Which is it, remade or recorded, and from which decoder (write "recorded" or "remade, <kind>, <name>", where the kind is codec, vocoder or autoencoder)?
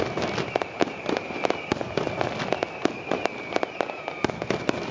remade, vocoder, BigVGAN v2